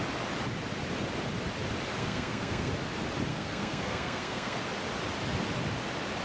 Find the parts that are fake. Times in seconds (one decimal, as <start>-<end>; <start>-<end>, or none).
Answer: 2.0-2.7; 3.3-4.6